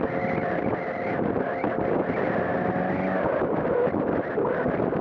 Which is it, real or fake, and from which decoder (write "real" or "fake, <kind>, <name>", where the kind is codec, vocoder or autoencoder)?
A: real